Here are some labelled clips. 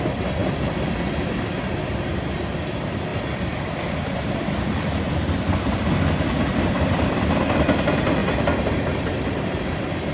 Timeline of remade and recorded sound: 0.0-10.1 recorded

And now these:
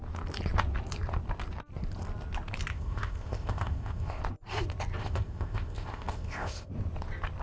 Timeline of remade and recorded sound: 0.0-2.7 recorded; 2.7-4.2 remade; 4.2-5.0 recorded; 5.0-6.7 remade; 6.7-7.4 recorded

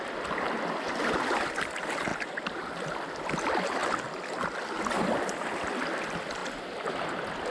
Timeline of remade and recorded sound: 0.0-7.5 recorded

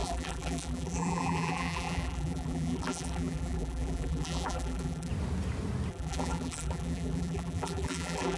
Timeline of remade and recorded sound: 0.0-5.1 remade; 5.1-5.9 recorded; 5.9-8.4 remade

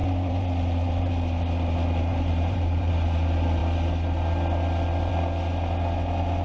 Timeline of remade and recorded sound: 0.0-1.1 remade; 1.1-2.1 recorded; 2.1-2.9 remade; 2.9-6.4 recorded

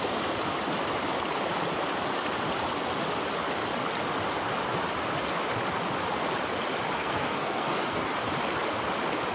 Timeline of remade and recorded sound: 0.0-7.0 recorded; 7.0-8.0 remade; 8.0-9.3 recorded